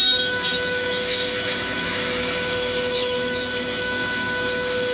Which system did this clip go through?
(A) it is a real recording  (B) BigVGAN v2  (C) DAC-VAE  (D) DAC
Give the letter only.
C